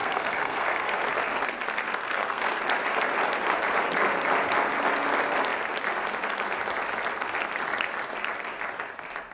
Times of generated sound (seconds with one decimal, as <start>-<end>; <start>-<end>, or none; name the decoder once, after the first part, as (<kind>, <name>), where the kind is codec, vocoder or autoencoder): 0.0-1.0 (codec, SNAC); 2.0-2.6